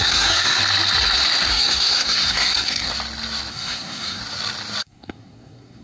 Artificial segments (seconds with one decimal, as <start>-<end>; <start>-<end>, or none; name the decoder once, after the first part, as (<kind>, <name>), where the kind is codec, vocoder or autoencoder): 0.0-0.6 (codec, SNAC); 1.5-2.9; 3.5-4.2; 4.8-5.8